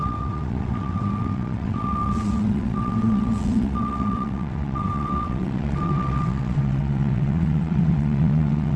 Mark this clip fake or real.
fake